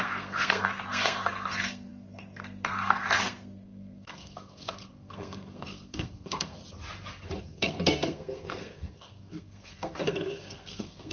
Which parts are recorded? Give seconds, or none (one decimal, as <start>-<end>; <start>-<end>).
6.6-7.4